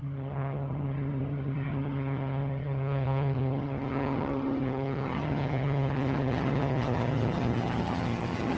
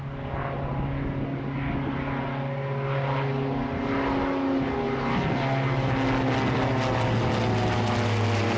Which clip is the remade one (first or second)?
first